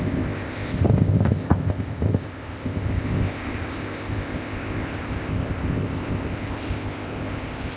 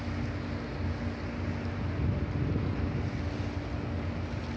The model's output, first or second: first